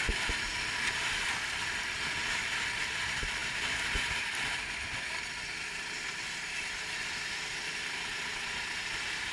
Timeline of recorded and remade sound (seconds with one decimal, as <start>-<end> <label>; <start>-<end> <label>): 0.0-9.3 recorded